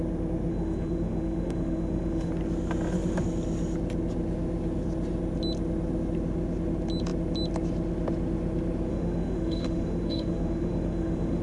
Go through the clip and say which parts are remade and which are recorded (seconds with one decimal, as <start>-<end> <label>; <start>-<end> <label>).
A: 0.0-0.5 recorded; 0.5-2.3 remade; 2.3-8.9 recorded; 8.9-11.4 remade